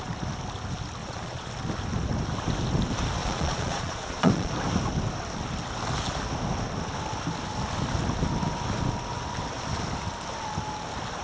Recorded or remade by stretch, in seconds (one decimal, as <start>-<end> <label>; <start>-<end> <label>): 0.0-1.0 recorded; 1.0-1.5 remade; 1.5-3.2 recorded; 3.2-4.5 remade; 4.5-11.2 recorded